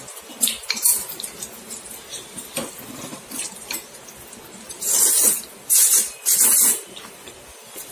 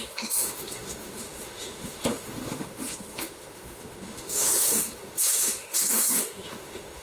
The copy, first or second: second